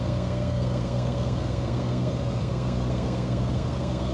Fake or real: fake